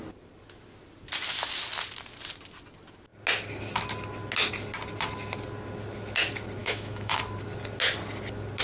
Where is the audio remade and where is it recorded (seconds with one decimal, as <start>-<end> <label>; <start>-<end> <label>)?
0.0-6.6 recorded; 6.6-7.2 remade; 7.2-8.6 recorded